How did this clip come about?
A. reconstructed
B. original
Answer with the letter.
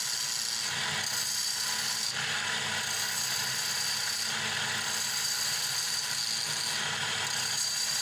B